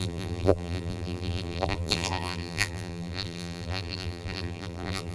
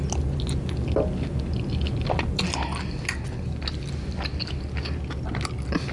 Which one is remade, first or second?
first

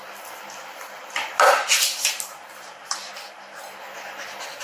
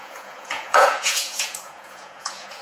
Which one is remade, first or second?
second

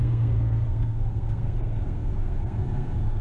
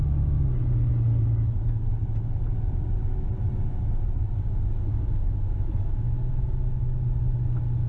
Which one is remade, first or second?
first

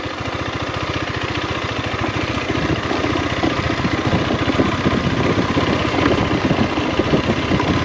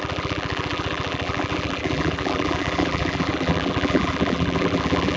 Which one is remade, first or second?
second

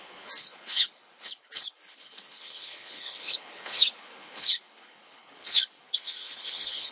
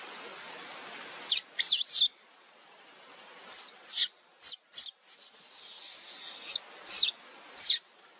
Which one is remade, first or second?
first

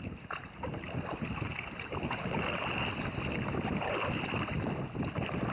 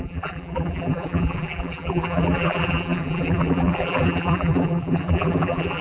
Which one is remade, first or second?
second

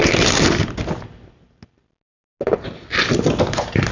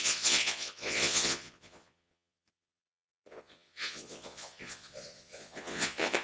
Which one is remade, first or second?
second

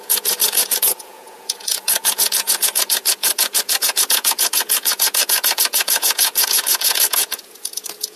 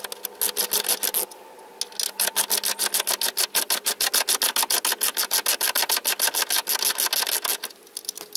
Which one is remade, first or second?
first